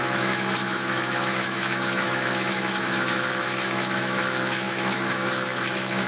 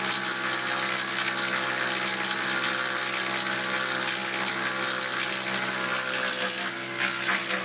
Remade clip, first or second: first